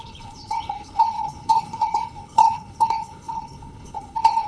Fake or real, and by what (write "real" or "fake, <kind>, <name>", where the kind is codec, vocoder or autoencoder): fake, codec, HILCodec